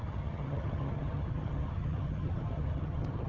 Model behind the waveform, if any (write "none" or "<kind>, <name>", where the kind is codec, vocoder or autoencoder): vocoder, HiFi-GAN